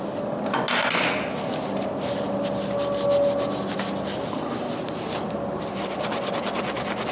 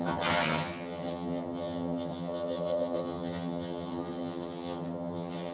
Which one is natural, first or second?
first